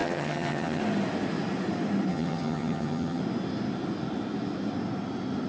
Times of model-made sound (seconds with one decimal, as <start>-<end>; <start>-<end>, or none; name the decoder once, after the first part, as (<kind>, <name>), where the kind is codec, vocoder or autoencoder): 0.0-0.8 (vocoder, HiFi-GAN); 2.1-3.2